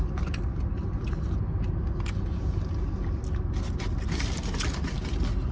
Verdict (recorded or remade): recorded